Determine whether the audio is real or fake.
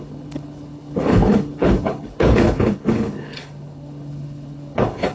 fake